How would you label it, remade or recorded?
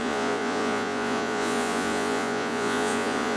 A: remade